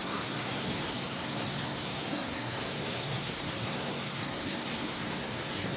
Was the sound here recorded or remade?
remade